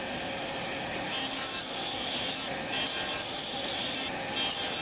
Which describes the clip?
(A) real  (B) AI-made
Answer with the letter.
A